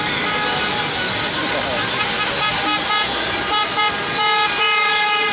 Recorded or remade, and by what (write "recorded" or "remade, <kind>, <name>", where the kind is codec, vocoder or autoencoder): recorded